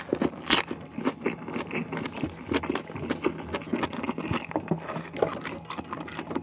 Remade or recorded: recorded